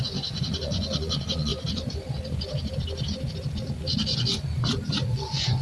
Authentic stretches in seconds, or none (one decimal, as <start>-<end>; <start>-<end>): 1.5-4.9